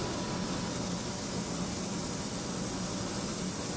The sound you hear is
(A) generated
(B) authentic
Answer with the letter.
B